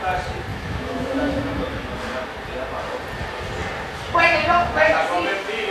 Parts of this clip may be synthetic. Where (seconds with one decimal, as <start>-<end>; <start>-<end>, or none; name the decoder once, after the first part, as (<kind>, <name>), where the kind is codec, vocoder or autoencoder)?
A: 0.5-1.9 (autoencoder, DAC-VAE)